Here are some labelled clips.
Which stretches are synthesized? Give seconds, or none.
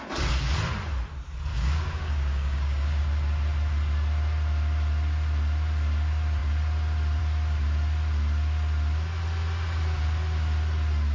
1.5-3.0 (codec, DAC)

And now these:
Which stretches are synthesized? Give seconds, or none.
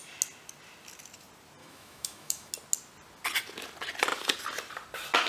1.6-2.5 (autoencoder, DAC-VAE)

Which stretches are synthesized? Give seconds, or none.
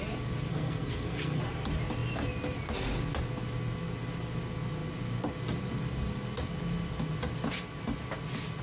0.5-1.4 (codec, SNAC)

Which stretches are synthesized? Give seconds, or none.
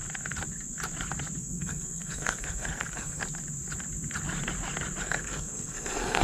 1.4-3.2 (codec, SNAC); 5.0-6.2